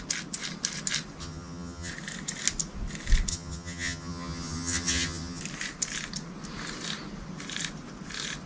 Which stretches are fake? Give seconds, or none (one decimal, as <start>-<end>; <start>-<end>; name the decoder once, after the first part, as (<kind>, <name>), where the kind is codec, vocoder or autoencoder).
1.2-1.9 (vocoder, HiFi-GAN); 3.3-5.4